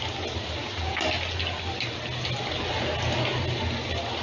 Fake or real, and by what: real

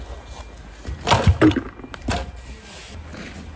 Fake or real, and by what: real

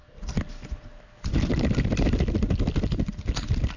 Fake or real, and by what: real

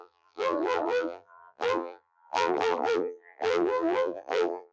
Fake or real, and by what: fake, vocoder, BigVGAN v2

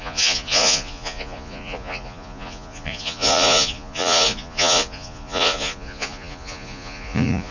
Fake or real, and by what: fake, vocoder, Vocos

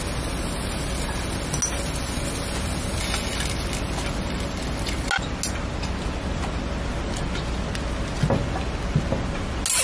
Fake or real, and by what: real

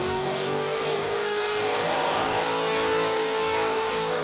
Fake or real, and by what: fake, codec, DAC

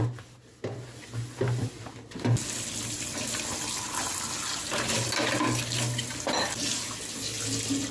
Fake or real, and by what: real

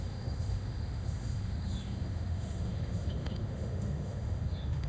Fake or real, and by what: fake, autoencoder, DAC-VAE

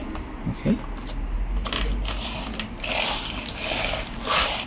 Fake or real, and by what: real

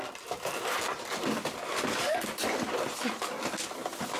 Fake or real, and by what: real